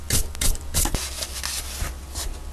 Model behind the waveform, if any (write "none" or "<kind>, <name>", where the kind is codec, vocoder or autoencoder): none